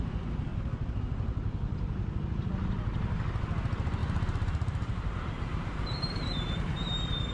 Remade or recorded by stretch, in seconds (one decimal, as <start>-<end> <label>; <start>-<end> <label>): 0.0-4.0 recorded; 4.0-7.3 remade

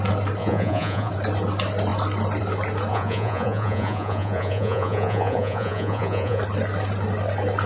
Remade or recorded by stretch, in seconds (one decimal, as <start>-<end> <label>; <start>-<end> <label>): 0.0-0.4 recorded; 0.4-1.1 remade; 1.1-2.9 recorded; 2.9-6.4 remade; 6.4-7.7 recorded

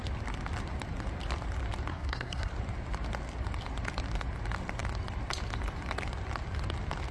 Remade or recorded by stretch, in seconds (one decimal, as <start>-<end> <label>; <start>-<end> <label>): 0.0-1.9 recorded; 1.9-2.5 remade; 2.5-7.1 recorded

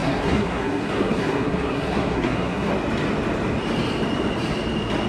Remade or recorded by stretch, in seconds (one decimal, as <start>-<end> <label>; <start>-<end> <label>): 0.0-2.7 remade; 2.7-5.1 recorded

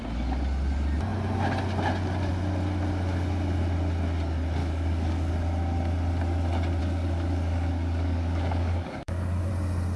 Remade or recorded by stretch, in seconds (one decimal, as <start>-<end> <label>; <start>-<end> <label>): 0.0-4.6 recorded; 4.6-5.3 remade; 5.3-6.8 recorded; 6.8-9.5 remade; 9.5-10.0 recorded

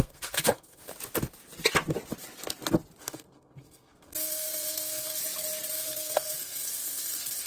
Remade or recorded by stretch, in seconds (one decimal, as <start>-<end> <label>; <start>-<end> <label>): 0.0-0.9 remade; 0.9-3.0 recorded; 3.0-5.2 remade; 5.2-5.7 recorded; 5.7-7.5 remade

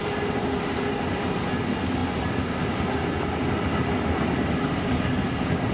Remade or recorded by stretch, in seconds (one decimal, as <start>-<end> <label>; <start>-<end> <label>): 0.0-5.7 recorded